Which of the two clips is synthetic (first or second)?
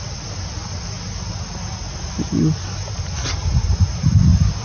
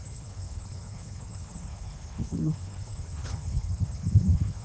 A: second